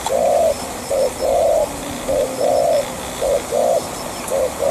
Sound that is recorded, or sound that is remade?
recorded